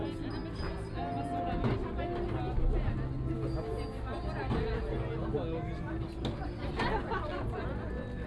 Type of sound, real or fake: real